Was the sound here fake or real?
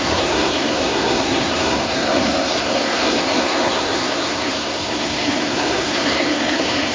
fake